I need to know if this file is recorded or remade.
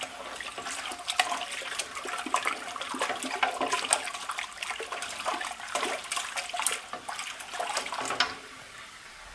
recorded